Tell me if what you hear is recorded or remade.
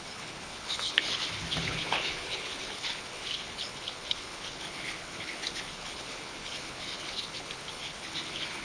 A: remade